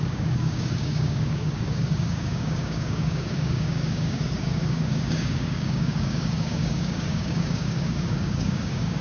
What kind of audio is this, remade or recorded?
remade